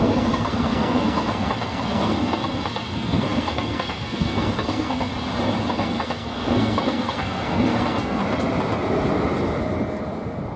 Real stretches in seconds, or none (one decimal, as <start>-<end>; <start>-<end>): 5.1-5.7; 8.2-10.6

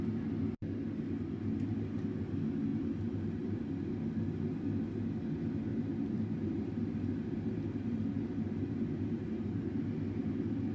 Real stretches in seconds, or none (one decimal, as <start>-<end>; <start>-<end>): 0.0-2.7; 3.7-5.7; 9.8-10.7

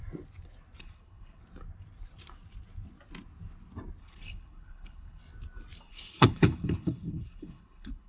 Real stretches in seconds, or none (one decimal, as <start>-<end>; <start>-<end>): 0.0-0.8; 1.4-4.0; 5.2-5.9

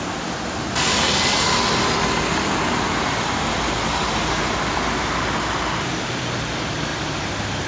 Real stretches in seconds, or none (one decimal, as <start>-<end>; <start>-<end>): 0.0-7.7

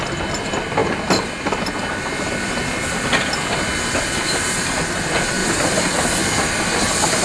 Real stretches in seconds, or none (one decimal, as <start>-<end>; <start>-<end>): 0.0-7.2